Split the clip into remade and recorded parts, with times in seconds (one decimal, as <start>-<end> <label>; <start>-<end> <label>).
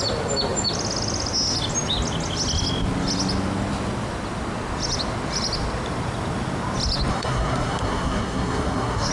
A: 0.0-7.1 recorded; 7.1-9.1 remade